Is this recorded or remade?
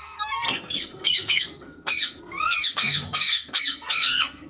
remade